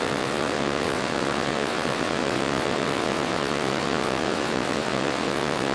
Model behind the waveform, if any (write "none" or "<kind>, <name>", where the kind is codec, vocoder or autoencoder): vocoder, WaveNeXt